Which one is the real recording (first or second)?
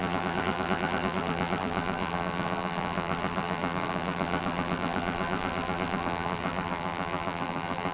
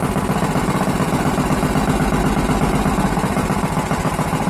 second